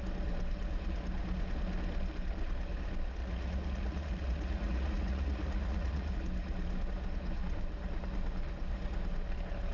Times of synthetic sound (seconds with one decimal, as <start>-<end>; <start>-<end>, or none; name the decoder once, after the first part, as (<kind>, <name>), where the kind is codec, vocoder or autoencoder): 3.2-6.1 (vocoder, Vocos)